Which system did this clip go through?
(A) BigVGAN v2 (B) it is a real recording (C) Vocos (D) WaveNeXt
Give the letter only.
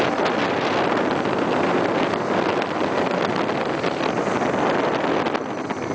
B